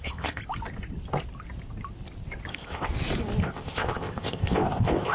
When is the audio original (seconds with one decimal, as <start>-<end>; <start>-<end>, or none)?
0.4-2.5; 2.9-3.4